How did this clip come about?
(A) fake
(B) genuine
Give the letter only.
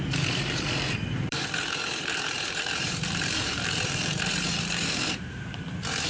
A